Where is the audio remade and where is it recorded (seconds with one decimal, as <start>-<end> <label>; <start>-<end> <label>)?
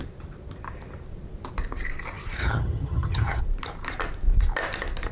0.0-2.4 recorded; 2.4-3.4 remade; 3.4-5.1 recorded